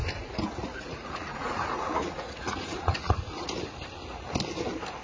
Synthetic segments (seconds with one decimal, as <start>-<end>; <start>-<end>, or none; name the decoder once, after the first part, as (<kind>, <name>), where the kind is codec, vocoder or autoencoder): 0.6-3.6 (vocoder, Vocos)